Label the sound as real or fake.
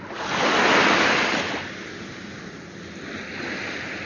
real